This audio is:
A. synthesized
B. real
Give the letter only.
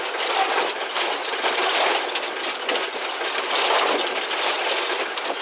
B